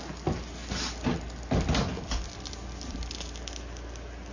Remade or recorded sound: recorded